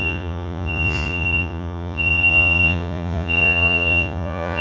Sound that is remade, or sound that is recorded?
remade